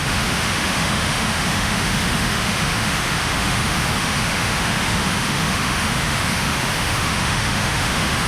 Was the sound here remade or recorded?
remade